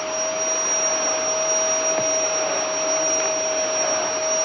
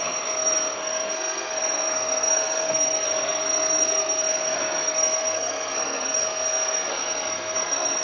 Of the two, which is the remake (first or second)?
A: second